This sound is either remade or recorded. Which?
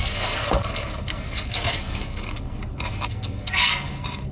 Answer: remade